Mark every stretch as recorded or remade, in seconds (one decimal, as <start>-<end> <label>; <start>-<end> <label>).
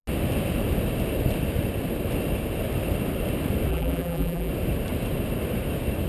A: 0.0-3.7 recorded; 3.7-4.5 remade; 4.5-6.1 recorded